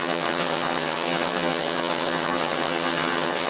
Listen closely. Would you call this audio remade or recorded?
remade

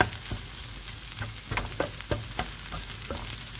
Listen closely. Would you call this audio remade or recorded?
recorded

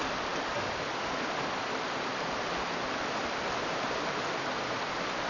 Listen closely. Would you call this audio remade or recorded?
recorded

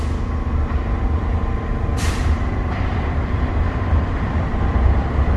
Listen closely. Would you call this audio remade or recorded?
remade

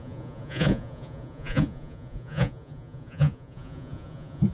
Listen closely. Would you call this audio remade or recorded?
remade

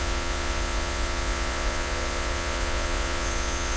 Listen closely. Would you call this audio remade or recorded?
remade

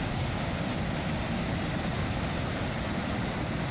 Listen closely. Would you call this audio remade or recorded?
recorded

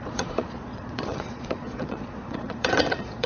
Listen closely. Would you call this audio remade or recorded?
remade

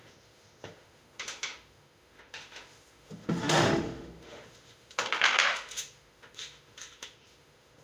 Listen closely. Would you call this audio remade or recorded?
remade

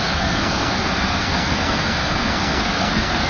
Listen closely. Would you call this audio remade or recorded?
remade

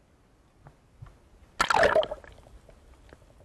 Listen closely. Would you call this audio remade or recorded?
recorded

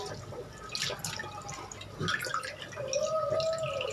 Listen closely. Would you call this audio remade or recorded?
recorded